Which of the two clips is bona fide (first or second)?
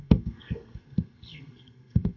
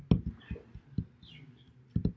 second